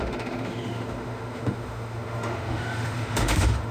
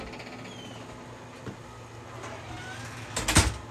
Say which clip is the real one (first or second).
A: second